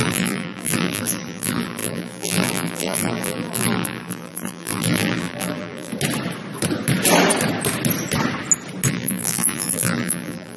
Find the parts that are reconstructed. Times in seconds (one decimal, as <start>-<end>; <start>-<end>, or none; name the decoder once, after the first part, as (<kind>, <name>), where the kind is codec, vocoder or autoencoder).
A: 0.0-5.9 (vocoder, BigVGAN v2); 8.9-10.6